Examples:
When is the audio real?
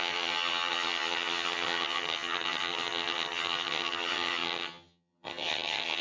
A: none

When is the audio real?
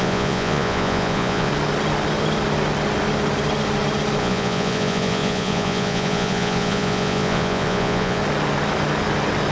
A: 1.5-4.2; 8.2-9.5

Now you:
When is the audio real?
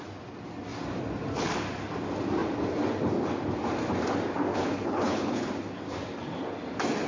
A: 0.0-4.5; 5.5-7.1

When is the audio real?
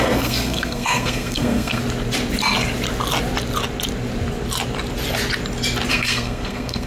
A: 1.8-5.9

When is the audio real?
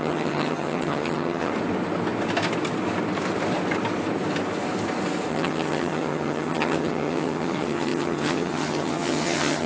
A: 1.5-5.3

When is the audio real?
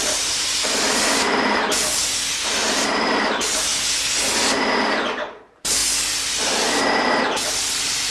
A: 1.9-2.6; 3.7-5.1; 5.8-6.8